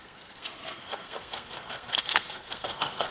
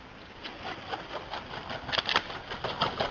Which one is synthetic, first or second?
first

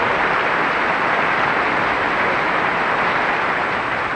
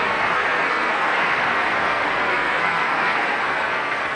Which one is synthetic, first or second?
second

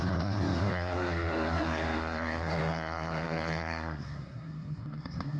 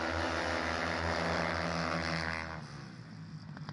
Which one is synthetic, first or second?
first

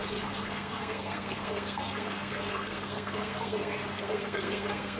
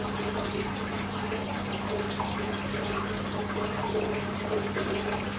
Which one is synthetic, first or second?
first